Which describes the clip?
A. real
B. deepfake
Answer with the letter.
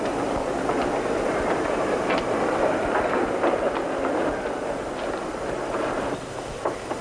A